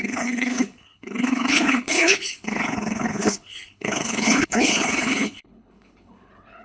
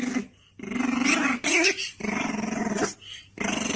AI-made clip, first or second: first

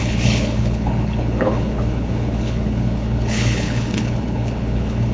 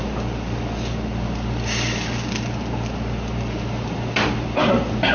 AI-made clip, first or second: first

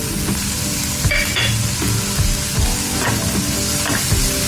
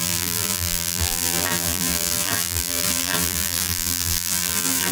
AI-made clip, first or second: second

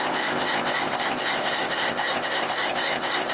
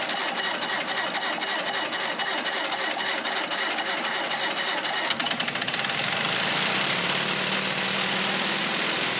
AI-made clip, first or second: first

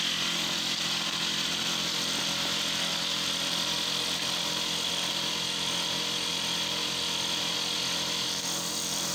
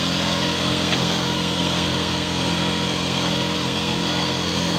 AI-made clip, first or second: second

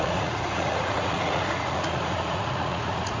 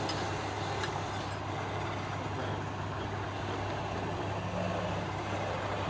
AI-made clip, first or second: first